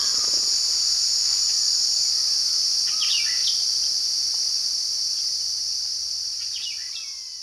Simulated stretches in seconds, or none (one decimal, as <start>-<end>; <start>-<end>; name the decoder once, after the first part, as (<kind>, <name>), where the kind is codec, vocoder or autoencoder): 0.0-2.1 (vocoder, BigVGAN v2); 5.6-6.6